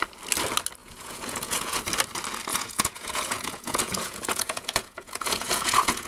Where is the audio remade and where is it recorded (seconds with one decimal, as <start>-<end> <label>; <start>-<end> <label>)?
0.0-0.8 recorded; 0.8-1.8 remade; 1.8-2.5 recorded; 2.5-6.1 remade